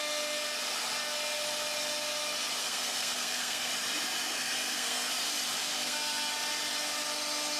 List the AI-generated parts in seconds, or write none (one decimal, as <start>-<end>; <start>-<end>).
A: 2.6-3.7; 4.3-5.1; 5.6-6.3